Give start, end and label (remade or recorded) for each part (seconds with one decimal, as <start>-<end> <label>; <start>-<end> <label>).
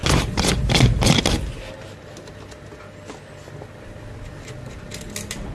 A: 0.0-5.5 recorded